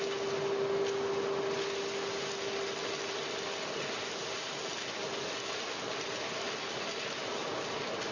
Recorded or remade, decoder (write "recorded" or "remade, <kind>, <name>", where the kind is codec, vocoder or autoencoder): recorded